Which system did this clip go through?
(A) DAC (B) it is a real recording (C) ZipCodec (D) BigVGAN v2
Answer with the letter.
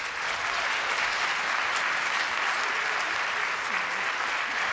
B